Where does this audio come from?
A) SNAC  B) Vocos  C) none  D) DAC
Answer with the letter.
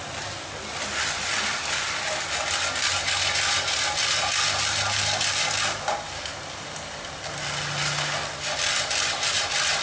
C